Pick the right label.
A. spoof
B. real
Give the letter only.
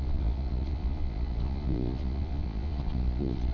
A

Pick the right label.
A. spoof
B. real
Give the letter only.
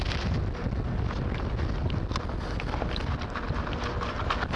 B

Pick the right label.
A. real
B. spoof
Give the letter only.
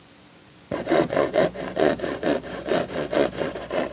B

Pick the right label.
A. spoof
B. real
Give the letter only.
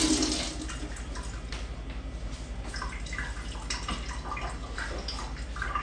B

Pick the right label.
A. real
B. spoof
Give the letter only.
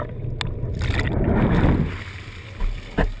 A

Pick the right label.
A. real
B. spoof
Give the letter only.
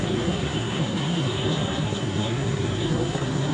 B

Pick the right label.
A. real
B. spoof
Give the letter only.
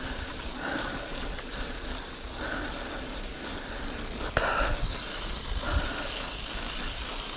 A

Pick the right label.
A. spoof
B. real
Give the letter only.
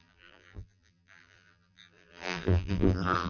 A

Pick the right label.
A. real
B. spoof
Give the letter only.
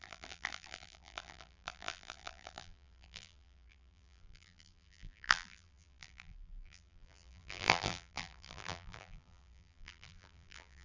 B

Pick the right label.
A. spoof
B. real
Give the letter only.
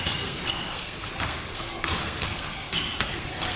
A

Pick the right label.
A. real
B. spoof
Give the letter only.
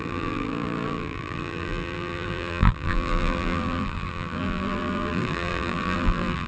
B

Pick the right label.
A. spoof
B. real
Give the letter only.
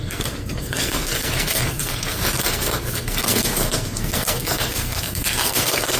A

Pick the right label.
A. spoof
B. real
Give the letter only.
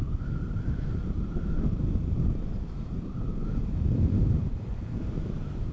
A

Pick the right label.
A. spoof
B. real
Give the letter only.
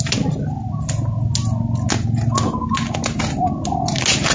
B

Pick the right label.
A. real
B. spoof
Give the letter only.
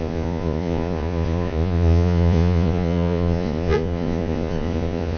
B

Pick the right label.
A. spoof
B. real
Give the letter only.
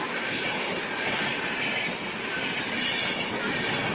B